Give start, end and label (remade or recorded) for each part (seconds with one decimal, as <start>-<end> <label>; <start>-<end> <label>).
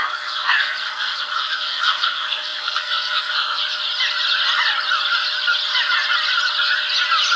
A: 0.0-3.6 remade; 3.6-7.4 recorded